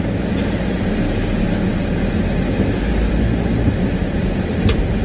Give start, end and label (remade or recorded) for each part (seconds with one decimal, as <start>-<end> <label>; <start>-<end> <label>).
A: 0.0-5.0 recorded